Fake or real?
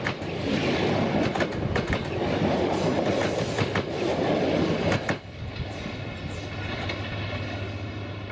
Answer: real